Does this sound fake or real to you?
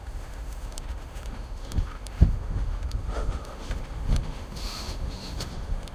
fake